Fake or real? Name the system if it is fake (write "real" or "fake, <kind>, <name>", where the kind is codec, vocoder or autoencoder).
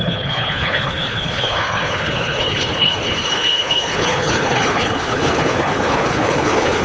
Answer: fake, codec, HILCodec